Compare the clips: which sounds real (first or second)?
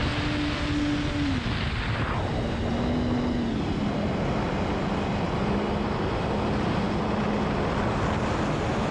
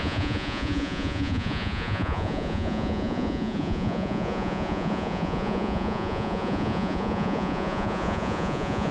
first